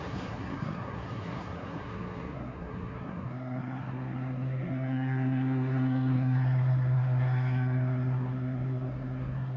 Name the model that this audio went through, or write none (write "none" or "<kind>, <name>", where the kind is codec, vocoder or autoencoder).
codec, SNAC